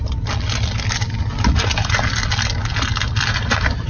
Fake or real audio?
real